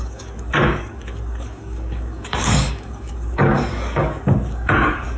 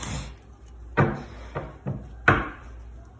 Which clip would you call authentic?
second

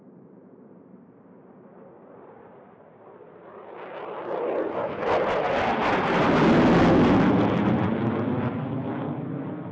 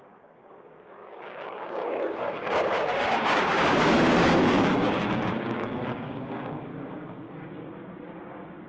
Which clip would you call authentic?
first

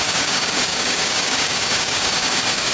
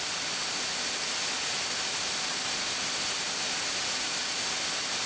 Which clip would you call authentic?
second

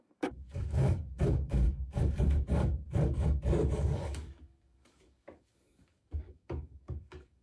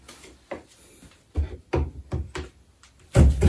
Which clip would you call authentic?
second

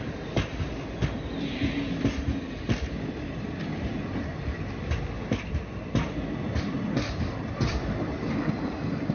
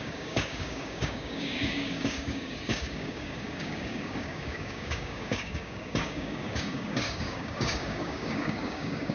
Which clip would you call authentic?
first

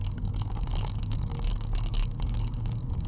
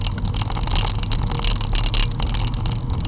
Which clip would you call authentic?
second